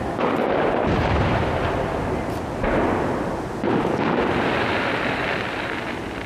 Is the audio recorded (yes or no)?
yes